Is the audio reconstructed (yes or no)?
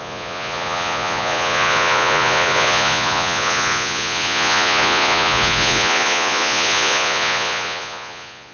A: yes